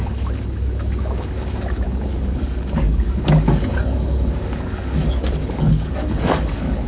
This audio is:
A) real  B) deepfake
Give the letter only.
B